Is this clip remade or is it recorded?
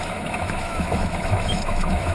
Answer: remade